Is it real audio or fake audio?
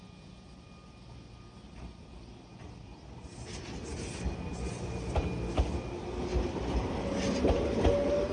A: real